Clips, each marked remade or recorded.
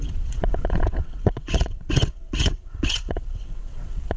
remade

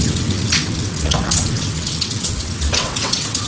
remade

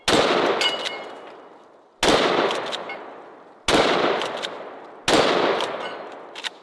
recorded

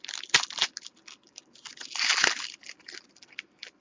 recorded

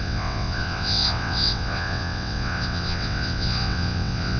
remade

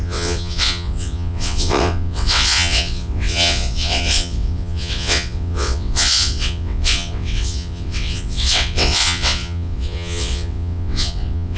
remade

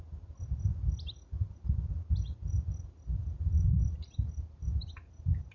recorded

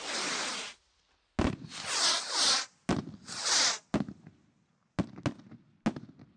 recorded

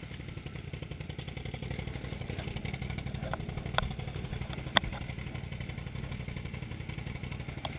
recorded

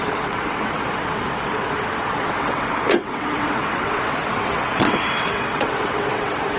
remade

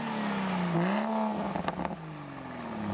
recorded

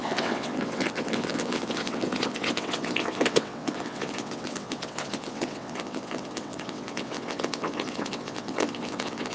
remade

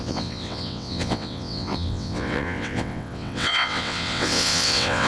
remade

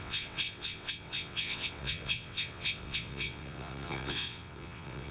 remade